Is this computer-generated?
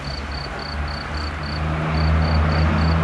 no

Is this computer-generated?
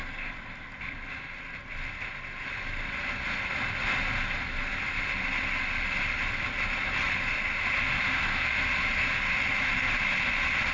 no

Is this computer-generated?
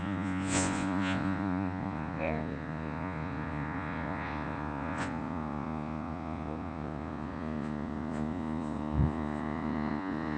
yes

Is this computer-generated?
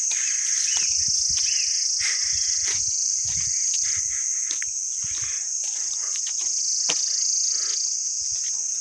no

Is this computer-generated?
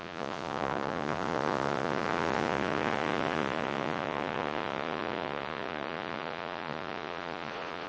yes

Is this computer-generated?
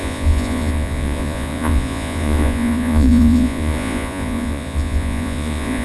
yes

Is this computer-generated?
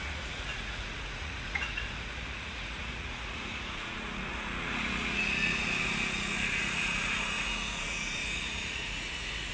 yes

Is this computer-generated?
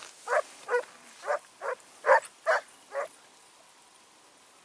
no